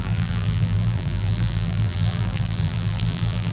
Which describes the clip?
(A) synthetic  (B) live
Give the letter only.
A